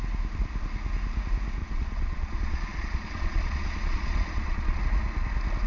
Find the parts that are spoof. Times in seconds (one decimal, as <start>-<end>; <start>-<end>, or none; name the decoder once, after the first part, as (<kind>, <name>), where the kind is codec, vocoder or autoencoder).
1.6-4.8 (vocoder, Vocos)